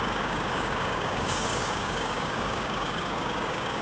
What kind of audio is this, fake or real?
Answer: fake